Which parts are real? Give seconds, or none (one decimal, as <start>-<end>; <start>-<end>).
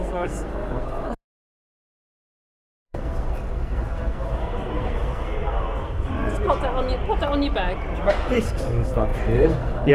6.1-8.1